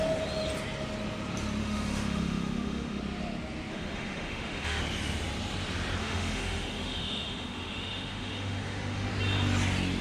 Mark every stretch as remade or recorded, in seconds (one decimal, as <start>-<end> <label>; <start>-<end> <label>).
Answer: 0.0-1.6 recorded; 1.6-3.0 remade; 3.0-3.7 recorded; 3.7-4.8 remade; 4.8-6.0 recorded; 6.0-9.1 remade; 9.1-10.0 recorded

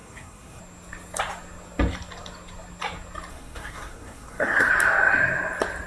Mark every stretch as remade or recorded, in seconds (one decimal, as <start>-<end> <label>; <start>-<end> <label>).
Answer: 0.0-0.6 remade; 0.6-3.3 recorded; 3.3-4.7 remade; 4.7-5.9 recorded

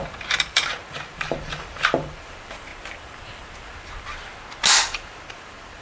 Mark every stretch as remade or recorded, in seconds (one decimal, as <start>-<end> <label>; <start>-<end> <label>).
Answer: 0.0-2.7 remade; 2.7-5.3 recorded; 5.3-5.8 remade

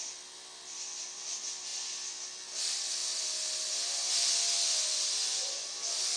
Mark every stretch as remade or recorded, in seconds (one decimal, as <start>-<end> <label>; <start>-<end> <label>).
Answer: 0.0-6.2 recorded

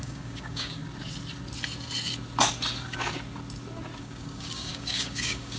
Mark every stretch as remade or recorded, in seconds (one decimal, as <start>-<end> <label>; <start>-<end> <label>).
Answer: 0.0-0.8 remade; 0.8-4.0 recorded; 4.0-5.6 remade

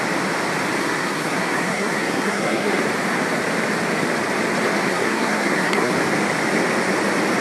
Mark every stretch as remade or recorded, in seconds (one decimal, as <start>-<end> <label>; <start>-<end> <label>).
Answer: 0.0-0.8 recorded; 0.8-2.8 remade; 2.8-4.8 recorded; 4.8-5.9 remade; 5.9-7.4 recorded

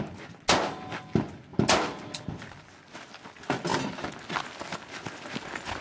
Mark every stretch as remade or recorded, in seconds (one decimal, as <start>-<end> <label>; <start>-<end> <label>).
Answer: 0.0-5.8 recorded

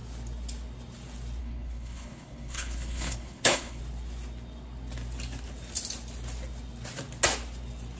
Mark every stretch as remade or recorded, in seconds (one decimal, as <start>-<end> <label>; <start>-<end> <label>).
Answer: 0.0-1.4 recorded; 1.4-3.8 remade; 3.8-8.0 recorded